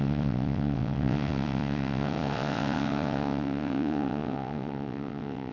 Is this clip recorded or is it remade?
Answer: remade